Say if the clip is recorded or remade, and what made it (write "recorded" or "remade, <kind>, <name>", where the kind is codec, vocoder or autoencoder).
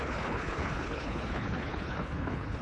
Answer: remade, codec, HILCodec